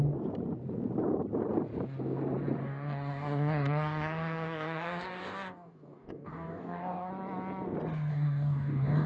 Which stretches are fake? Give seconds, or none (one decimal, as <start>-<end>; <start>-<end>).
2.6-7.1; 8.1-9.1